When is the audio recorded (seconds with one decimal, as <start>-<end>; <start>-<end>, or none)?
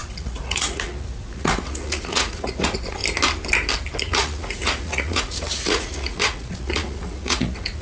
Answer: 3.0-4.0